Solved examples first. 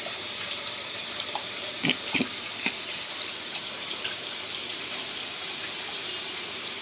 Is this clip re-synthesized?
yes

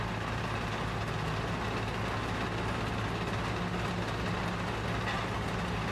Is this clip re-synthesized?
no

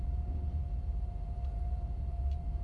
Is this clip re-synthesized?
yes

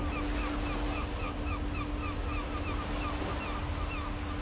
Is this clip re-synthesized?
no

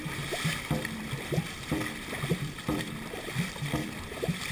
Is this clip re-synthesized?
yes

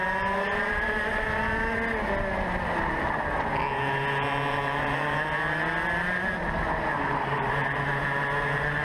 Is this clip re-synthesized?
no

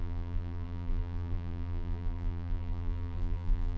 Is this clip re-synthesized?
yes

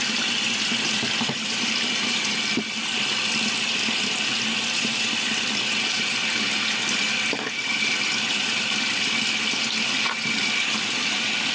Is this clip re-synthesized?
no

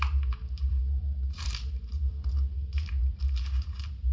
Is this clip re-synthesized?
yes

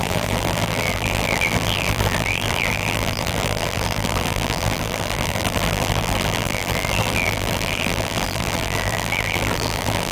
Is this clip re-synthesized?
yes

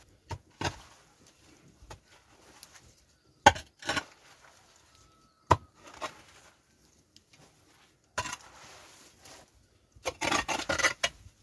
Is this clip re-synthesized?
no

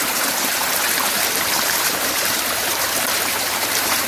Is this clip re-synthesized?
yes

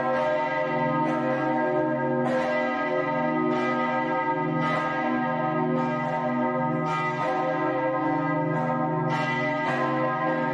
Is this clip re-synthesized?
no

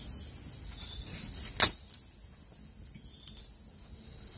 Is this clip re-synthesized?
no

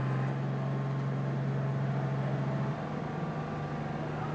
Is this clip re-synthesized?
no